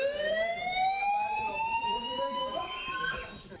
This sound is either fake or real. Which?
fake